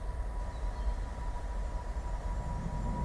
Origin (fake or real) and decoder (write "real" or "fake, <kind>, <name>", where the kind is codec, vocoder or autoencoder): real